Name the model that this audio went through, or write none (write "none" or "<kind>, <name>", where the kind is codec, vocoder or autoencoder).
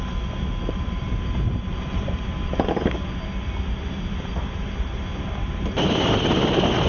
none